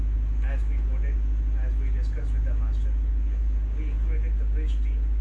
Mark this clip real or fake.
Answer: real